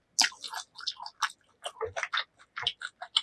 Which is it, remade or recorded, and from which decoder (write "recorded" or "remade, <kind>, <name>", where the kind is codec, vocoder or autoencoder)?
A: recorded